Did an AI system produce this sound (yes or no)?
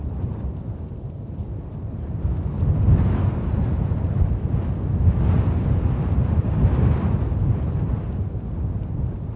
no